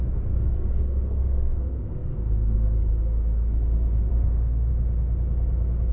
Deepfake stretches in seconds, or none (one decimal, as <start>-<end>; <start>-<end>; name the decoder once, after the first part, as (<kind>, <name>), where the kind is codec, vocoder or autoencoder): 0.0-4.7 (codec, SNAC)